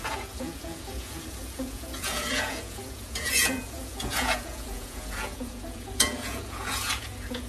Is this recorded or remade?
remade